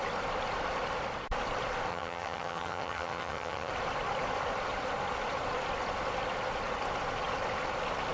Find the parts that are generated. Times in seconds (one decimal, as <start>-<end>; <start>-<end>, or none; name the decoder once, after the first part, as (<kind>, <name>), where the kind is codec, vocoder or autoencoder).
1.9-3.7 (vocoder, HiFi-GAN)